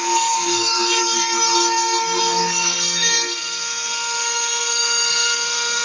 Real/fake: fake